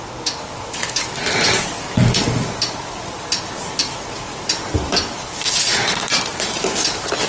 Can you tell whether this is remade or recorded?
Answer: recorded